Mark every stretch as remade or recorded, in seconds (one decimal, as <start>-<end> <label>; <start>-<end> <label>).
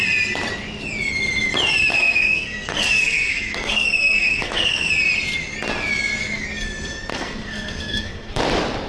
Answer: 0.0-1.9 recorded; 1.9-4.9 remade; 4.9-7.1 recorded; 7.1-8.4 remade; 8.4-8.9 recorded